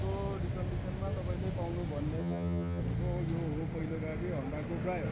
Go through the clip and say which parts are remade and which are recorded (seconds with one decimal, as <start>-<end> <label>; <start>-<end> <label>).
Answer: 0.0-2.2 recorded; 2.2-2.8 remade; 2.8-5.1 recorded